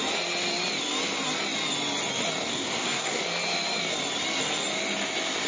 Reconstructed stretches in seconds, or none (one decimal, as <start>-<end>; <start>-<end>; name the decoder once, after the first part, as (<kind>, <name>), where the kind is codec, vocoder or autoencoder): 2.5-3.2 (codec, SNAC)